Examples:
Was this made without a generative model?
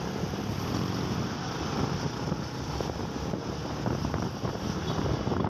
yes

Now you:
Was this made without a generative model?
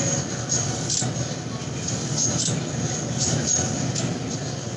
yes